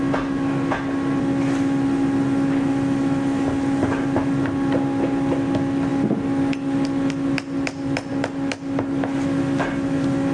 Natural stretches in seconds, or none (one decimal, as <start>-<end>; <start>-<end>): 0.0-10.3